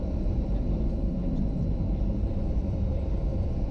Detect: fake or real real